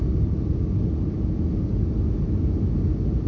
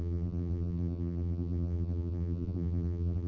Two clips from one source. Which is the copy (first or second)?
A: second